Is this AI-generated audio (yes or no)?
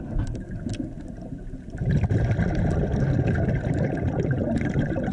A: no